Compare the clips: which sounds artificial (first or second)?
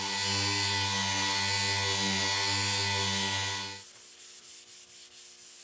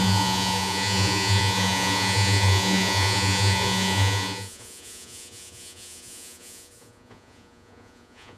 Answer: second